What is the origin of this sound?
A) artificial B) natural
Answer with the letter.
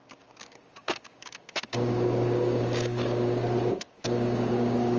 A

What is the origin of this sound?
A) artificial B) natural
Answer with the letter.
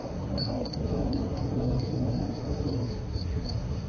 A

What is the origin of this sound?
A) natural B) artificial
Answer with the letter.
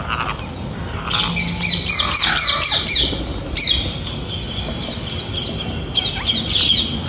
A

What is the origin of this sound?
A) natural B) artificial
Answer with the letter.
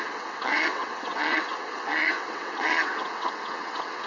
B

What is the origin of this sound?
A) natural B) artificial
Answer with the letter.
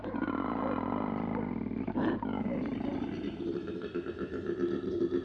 A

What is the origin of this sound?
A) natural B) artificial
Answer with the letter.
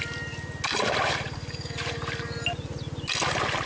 A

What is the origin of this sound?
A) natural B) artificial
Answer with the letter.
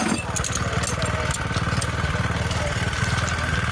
A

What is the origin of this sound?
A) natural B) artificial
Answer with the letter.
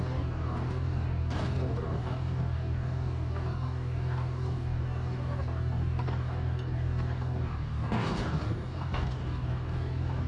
B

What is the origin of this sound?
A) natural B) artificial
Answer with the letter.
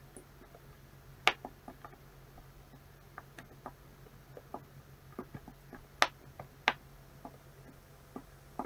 A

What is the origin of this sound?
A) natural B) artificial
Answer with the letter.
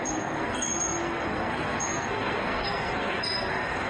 B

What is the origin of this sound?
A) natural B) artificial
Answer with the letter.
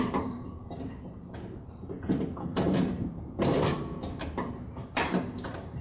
B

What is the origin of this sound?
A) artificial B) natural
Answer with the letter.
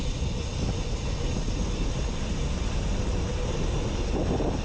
B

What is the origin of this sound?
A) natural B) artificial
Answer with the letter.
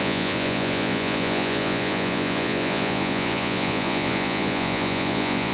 B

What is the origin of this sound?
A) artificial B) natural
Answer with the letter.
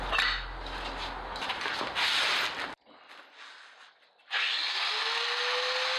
B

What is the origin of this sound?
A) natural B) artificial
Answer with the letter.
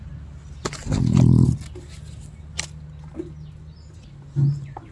A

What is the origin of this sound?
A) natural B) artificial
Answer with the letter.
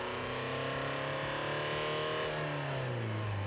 A